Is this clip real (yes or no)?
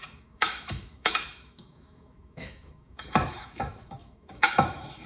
no